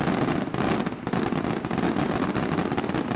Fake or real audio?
real